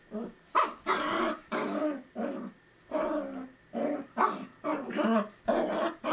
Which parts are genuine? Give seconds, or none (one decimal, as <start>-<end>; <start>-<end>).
0.0-6.1